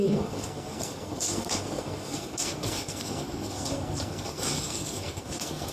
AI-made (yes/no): yes